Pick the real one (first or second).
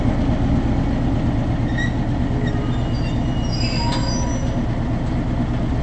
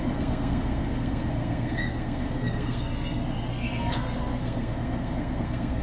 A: first